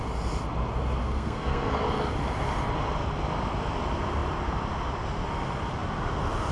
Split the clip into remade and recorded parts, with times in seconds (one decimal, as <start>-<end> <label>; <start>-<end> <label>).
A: 0.0-1.0 recorded; 1.0-1.7 remade; 1.7-6.5 recorded